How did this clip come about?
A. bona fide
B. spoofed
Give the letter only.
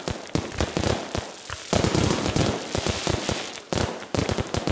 A